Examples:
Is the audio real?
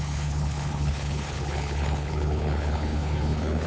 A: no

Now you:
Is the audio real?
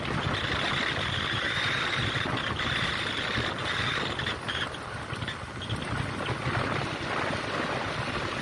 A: yes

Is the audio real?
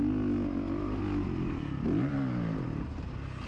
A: yes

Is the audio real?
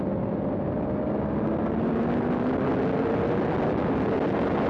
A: yes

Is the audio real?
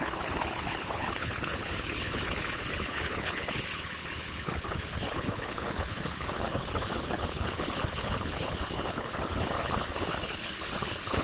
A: no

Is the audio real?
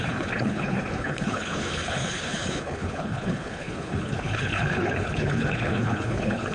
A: no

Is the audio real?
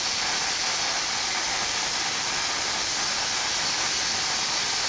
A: yes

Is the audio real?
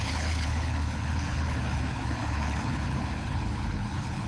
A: no